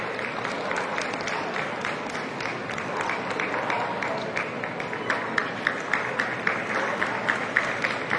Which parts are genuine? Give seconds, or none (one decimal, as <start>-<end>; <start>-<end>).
0.0-5.4; 5.9-8.2